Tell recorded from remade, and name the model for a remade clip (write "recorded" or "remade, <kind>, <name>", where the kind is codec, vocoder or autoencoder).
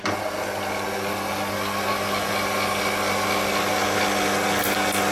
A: recorded